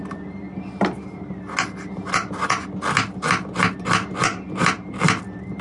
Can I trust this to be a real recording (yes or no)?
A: yes